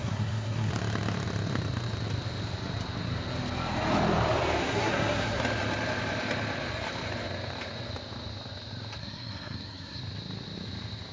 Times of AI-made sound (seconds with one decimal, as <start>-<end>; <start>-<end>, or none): 0.0-0.7; 4.6-5.4; 9.0-10.0